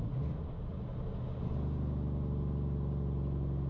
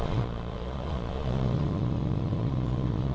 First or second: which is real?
first